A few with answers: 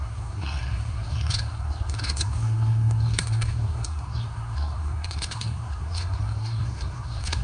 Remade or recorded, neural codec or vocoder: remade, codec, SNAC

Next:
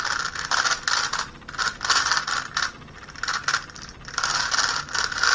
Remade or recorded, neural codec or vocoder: recorded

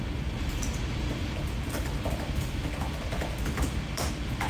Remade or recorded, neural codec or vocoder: recorded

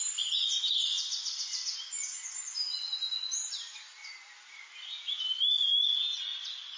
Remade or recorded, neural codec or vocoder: recorded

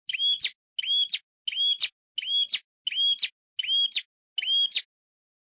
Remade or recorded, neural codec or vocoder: recorded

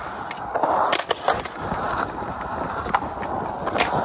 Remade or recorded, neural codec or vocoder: recorded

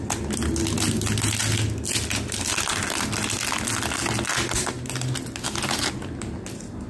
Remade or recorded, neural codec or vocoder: recorded